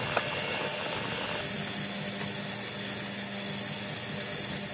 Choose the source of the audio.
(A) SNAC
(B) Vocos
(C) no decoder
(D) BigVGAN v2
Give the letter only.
C